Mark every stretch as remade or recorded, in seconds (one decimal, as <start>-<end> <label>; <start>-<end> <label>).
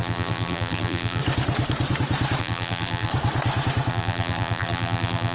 0.0-1.2 remade; 1.2-2.4 recorded; 2.4-3.1 remade; 3.1-3.9 recorded; 3.9-5.3 remade